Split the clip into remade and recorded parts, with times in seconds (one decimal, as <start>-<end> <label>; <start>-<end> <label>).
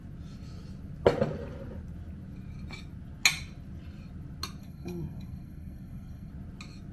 0.0-4.6 recorded; 4.6-6.3 remade; 6.3-6.9 recorded